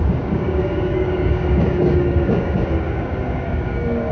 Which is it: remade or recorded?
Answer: remade